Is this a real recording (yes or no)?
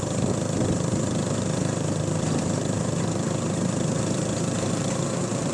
no